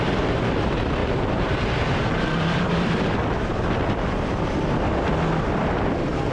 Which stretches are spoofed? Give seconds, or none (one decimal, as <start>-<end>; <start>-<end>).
0.0-3.5; 5.4-6.3